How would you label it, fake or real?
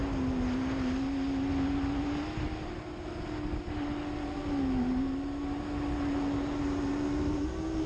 real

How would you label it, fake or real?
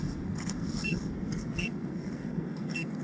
fake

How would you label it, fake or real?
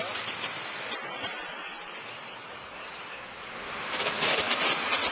fake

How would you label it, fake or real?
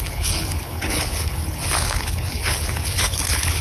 fake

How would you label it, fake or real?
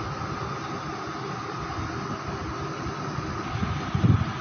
real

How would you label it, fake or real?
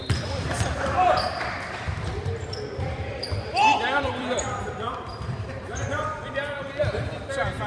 fake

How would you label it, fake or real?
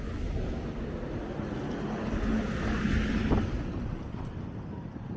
real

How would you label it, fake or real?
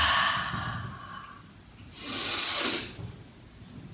real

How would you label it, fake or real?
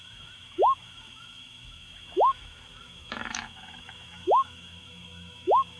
fake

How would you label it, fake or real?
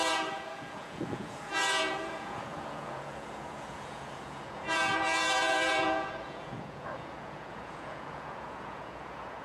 fake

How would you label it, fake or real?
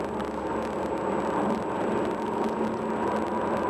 real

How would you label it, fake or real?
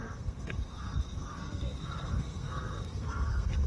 fake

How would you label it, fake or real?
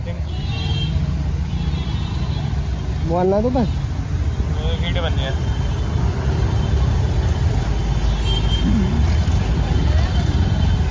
real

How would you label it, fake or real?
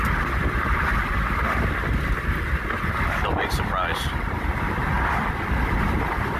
real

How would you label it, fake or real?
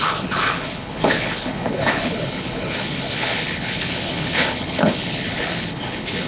fake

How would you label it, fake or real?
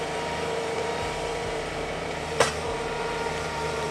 fake